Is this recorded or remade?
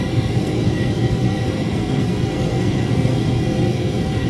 remade